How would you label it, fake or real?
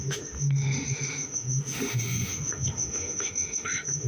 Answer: fake